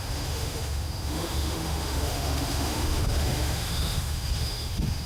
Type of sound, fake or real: fake